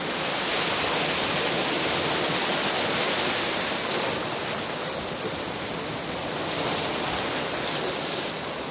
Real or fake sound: real